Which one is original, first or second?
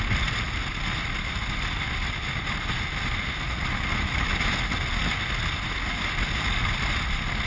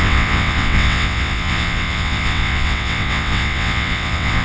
first